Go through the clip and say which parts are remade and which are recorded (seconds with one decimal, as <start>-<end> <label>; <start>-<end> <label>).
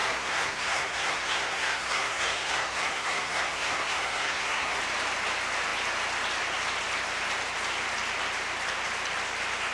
0.0-4.8 remade; 4.8-9.7 recorded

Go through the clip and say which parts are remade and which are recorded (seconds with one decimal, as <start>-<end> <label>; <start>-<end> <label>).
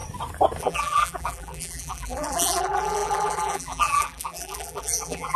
0.0-0.6 recorded; 0.6-5.4 remade